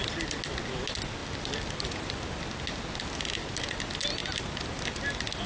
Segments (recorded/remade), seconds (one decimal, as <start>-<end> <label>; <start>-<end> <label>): 0.0-5.5 recorded